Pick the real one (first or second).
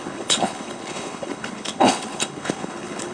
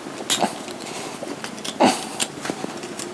second